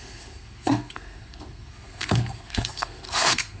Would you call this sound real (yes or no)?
no